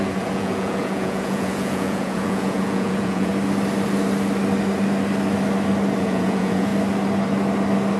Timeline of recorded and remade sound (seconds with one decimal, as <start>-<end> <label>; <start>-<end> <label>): 0.0-3.3 remade; 3.3-6.0 recorded; 6.0-6.7 remade; 6.7-8.0 recorded